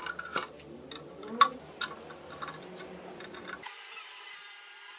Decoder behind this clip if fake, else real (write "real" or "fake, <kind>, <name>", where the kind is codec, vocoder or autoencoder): real